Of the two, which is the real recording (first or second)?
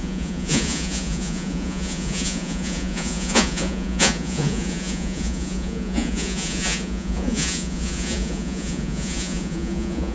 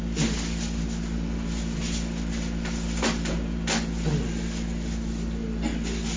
second